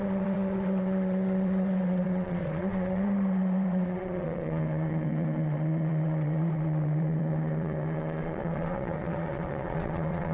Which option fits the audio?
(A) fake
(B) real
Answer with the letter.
A